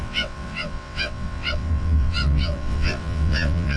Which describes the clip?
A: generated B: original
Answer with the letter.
A